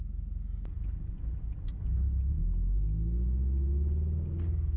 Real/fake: real